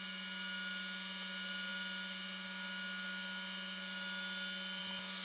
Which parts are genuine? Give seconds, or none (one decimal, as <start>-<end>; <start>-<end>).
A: 0.0-5.2